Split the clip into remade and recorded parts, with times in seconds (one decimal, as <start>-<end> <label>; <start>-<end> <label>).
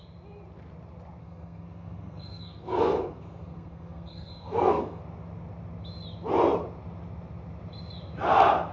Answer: 0.0-1.2 recorded; 1.2-5.0 remade; 5.0-8.7 recorded